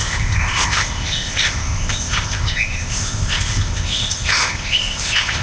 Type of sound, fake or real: fake